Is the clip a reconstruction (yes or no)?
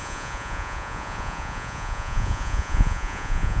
yes